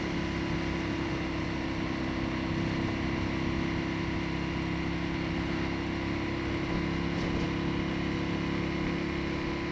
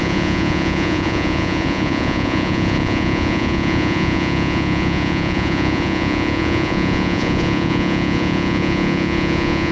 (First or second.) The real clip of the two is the first